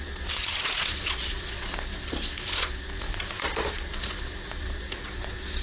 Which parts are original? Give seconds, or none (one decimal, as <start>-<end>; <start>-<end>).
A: none